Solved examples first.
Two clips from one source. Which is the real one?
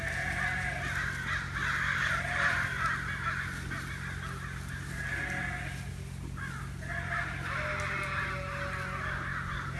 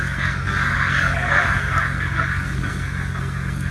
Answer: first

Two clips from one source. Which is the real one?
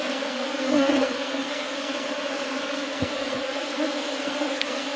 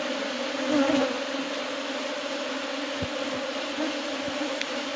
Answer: second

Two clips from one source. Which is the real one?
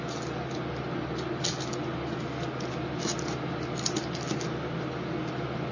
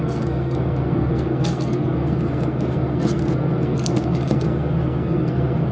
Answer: first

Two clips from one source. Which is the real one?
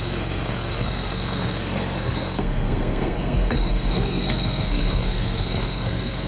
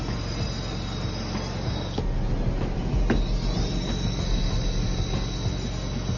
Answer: second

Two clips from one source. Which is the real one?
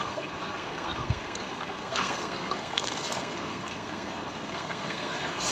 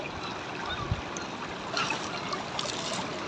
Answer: second